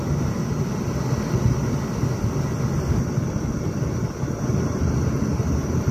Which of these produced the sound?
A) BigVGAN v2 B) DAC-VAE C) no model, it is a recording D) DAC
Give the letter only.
C